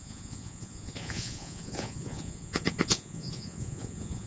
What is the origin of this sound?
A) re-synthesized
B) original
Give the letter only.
A